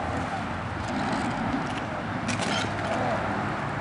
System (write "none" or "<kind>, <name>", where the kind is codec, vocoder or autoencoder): none